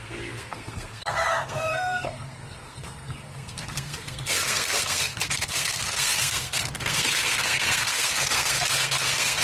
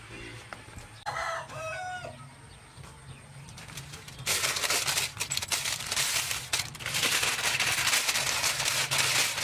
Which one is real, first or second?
second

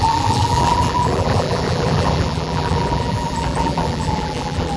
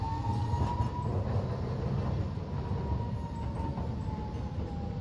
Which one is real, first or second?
second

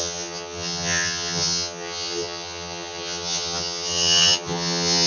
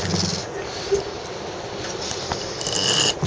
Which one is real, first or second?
second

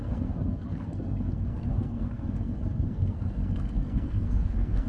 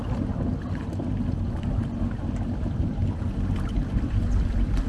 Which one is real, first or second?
second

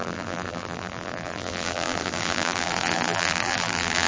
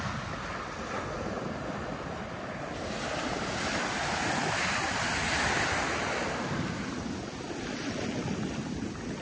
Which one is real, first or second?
second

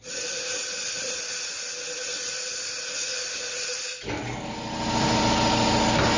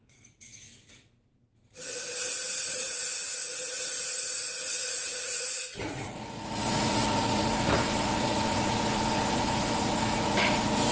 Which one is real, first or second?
first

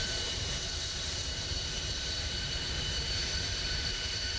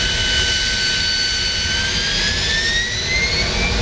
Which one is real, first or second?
second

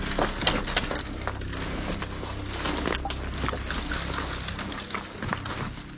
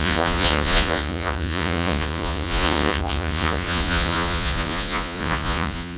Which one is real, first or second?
first